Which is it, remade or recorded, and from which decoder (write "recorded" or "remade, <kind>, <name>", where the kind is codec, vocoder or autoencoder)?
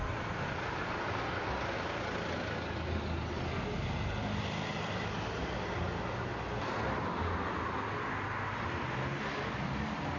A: recorded